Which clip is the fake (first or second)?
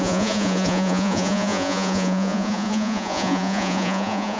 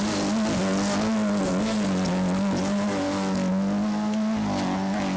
first